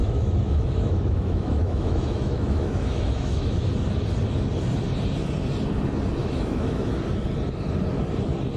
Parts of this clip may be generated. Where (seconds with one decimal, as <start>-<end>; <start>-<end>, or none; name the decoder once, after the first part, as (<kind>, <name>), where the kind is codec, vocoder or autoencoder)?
0.0-3.7 (autoencoder, DAC-VAE); 6.2-6.9